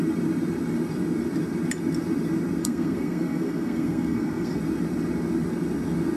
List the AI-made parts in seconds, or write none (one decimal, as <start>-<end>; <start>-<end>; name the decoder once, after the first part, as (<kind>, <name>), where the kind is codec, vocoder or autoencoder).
2.6-4.6 (codec, SNAC)